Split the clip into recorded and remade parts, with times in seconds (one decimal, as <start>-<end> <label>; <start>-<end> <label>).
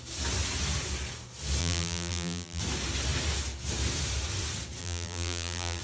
0.0-1.6 recorded; 1.6-2.6 remade; 2.6-4.8 recorded; 4.8-5.8 remade